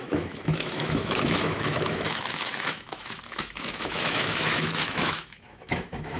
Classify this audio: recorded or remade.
remade